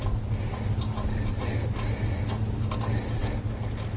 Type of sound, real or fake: real